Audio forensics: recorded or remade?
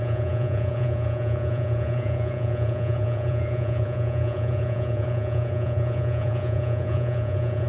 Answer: remade